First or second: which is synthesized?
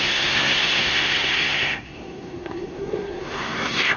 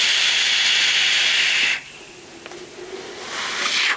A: first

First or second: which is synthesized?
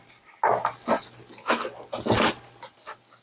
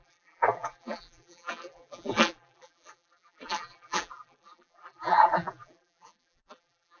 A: second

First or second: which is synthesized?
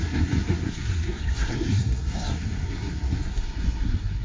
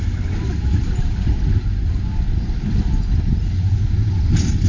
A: first